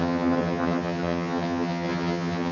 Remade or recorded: remade